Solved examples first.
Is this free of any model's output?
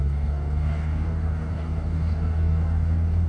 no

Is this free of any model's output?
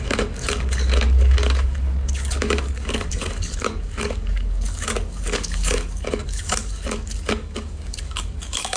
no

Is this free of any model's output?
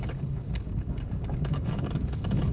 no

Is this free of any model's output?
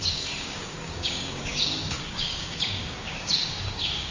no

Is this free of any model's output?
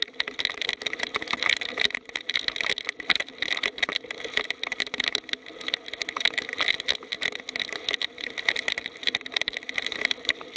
yes